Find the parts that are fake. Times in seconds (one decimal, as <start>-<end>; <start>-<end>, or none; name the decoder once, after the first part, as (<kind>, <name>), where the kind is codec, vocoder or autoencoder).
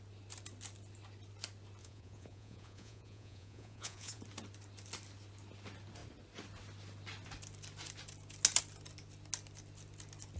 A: 1.8-4.2 (vocoder, Vocos)